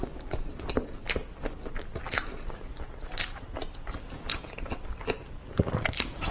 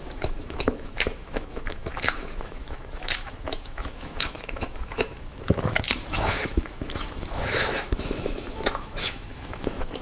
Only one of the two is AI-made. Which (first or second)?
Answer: second